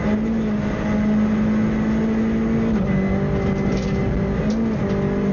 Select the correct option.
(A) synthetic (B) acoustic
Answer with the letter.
B